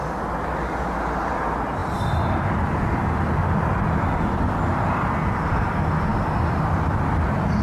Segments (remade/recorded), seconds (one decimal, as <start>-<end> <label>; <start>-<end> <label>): 0.0-7.6 recorded